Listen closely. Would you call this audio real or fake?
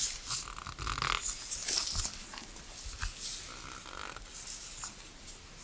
real